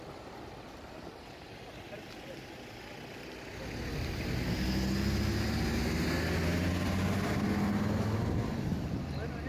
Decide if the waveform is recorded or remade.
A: recorded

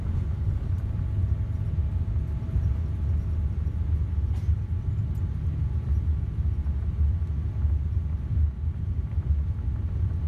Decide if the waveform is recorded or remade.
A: recorded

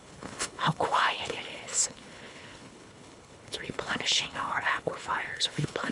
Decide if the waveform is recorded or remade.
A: remade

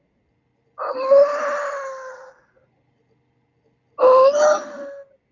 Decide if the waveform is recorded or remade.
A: recorded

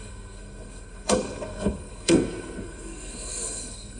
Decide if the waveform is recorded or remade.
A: remade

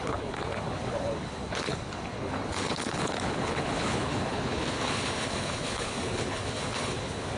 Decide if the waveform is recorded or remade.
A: remade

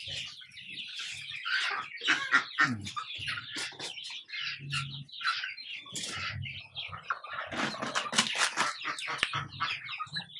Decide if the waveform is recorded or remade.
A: recorded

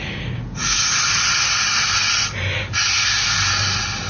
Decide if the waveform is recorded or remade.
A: recorded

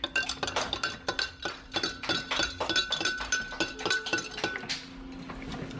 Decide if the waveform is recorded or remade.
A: recorded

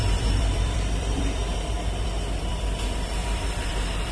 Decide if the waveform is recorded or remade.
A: remade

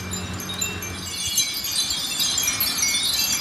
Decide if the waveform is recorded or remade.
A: recorded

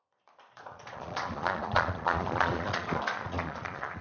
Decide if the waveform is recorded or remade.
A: remade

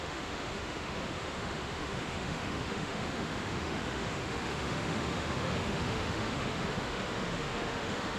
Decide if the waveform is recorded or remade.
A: remade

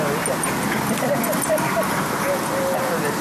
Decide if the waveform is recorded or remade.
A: recorded